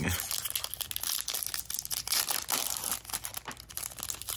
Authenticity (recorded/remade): recorded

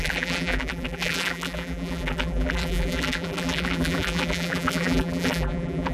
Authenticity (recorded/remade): remade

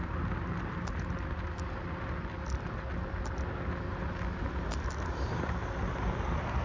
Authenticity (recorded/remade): recorded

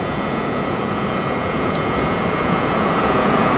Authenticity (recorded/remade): remade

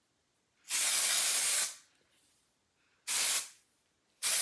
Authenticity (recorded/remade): recorded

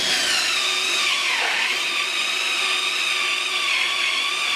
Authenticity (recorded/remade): recorded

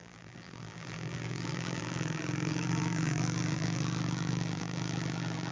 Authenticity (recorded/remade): remade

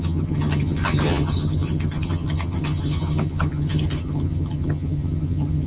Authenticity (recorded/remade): remade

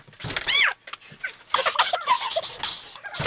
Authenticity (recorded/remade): recorded